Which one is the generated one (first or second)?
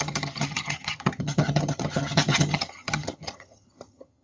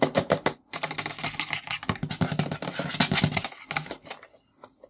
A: first